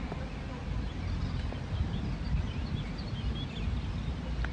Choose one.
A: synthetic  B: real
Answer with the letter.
B